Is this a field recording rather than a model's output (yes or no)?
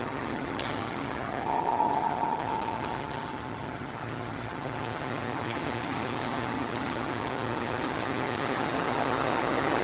no